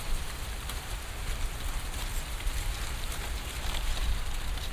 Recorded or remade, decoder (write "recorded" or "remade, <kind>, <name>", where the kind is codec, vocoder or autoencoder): remade, vocoder, BigVGAN v2